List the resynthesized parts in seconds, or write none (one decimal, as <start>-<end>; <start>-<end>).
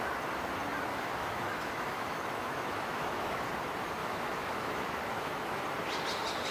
0.9-3.5; 4.0-5.6